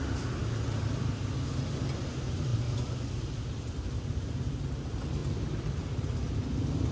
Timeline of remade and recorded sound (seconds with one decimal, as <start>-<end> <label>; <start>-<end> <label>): 0.0-6.9 recorded